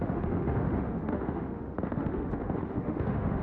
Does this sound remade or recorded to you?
remade